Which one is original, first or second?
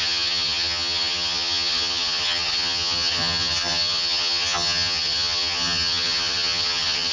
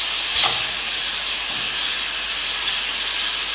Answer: second